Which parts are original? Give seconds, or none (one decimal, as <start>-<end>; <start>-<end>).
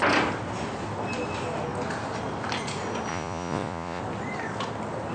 0.0-3.1; 4.0-5.1